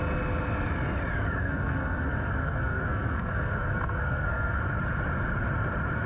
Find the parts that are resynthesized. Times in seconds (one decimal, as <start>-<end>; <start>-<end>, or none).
1.4-4.6